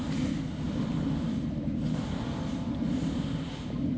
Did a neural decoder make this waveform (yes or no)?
no